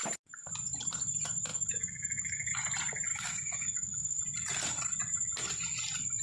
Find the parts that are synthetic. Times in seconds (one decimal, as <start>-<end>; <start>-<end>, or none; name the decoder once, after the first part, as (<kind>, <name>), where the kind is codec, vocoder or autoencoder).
1.5-2.5 (autoencoder, DAC-VAE); 3.1-4.2